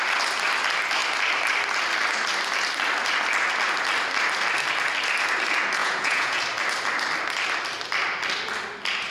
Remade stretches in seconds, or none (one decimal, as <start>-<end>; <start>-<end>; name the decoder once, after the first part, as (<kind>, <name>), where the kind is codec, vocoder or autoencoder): 5.8-6.4 (vocoder, Vocos)